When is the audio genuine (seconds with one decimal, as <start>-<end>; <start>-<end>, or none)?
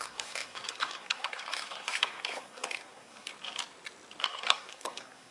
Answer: 3.3-4.2